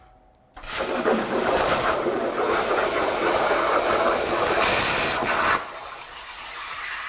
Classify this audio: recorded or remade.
recorded